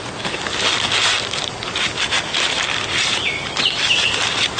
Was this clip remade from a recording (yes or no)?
no